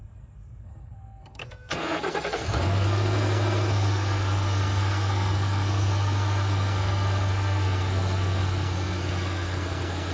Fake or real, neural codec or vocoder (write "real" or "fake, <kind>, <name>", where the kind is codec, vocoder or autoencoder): fake, codec, SNAC